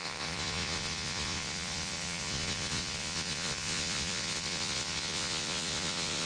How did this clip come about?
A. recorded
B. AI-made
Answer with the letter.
B